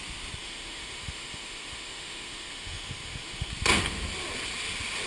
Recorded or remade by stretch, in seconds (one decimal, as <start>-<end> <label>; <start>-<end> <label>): 0.0-0.4 recorded; 0.4-3.5 remade; 3.5-5.1 recorded